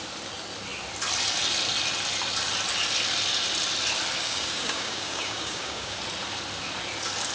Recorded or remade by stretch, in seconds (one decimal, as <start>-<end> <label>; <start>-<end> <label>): 0.0-4.2 recorded; 4.2-6.0 remade; 6.0-7.3 recorded